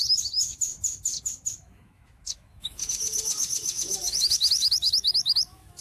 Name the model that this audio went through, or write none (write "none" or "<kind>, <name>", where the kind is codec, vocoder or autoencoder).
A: autoencoder, DAC-VAE